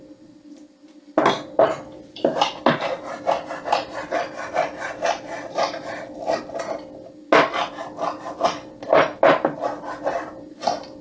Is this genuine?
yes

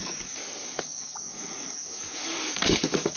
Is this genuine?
no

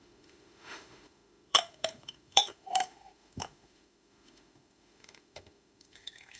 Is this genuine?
no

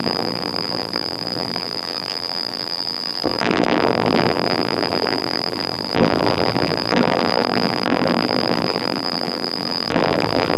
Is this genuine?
no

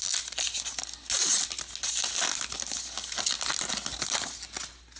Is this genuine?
yes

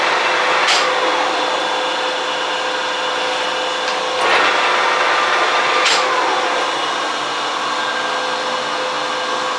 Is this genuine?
yes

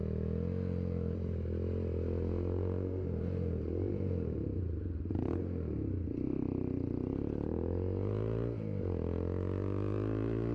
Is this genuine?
yes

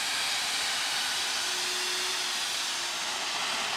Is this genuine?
yes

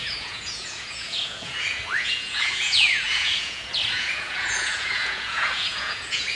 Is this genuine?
no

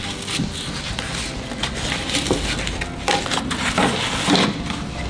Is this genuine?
yes